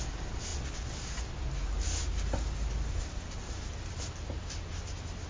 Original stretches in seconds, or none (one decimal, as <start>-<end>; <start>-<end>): 0.0-5.3